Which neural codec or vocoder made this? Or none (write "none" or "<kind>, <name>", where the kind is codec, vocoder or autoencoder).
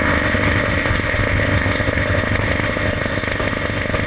codec, ZipCodec